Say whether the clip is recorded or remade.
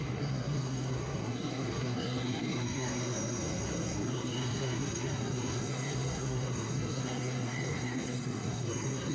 remade